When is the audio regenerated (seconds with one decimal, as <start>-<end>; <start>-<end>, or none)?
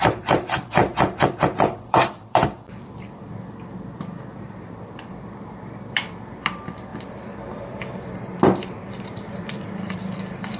0.0-0.8; 1.3-10.6